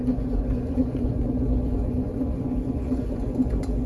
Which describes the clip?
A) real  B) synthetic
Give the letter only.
B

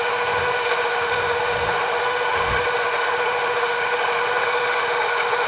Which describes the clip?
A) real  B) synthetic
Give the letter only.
B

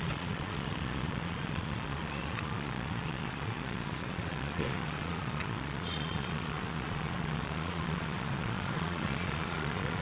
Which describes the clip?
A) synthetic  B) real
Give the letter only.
A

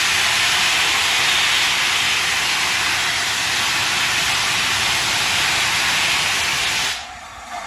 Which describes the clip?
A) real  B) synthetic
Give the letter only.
A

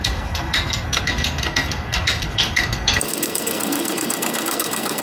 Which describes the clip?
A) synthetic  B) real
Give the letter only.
A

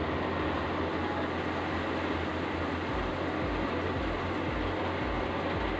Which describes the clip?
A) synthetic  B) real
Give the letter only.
B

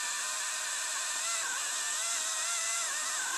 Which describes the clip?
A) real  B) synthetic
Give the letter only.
A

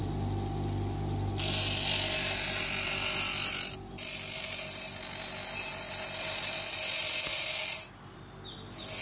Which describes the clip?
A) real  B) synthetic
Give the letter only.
A